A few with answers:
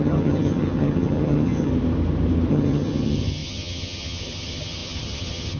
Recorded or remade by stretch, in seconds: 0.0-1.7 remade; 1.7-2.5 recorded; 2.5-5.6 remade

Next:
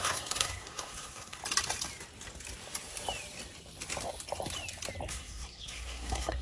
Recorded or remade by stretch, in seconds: 0.0-1.4 remade; 1.4-5.1 recorded; 5.1-6.4 remade

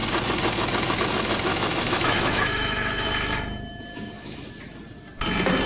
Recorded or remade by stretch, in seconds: 0.0-1.5 recorded; 1.5-3.1 remade; 3.1-3.9 recorded; 3.9-4.5 remade; 4.5-5.7 recorded

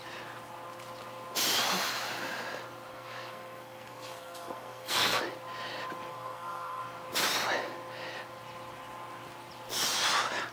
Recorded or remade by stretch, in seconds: 0.0-2.9 recorded; 2.9-5.2 remade; 5.2-6.1 recorded; 6.1-6.8 remade; 6.8-10.5 recorded

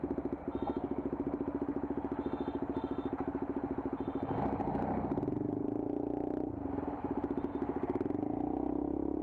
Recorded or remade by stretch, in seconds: 0.0-9.2 recorded

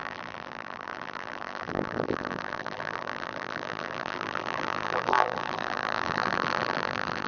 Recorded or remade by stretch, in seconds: 0.0-7.3 remade